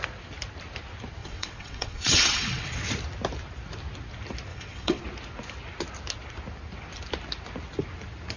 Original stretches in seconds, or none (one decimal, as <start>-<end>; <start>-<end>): 0.0-1.2; 2.9-4.5; 5.0-8.4